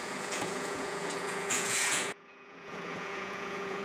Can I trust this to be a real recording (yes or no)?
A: no